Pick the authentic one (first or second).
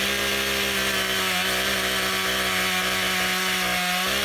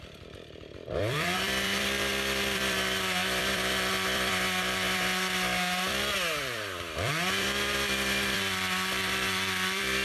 first